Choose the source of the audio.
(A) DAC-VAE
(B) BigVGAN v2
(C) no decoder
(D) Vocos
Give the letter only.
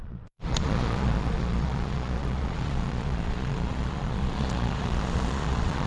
D